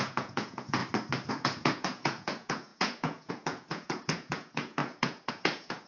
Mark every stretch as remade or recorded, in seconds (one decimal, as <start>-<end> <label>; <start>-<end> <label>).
0.0-0.8 remade; 0.8-1.3 recorded; 1.3-5.9 remade